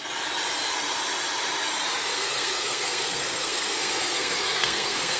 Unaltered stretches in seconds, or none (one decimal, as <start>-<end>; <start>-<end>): 0.0-2.1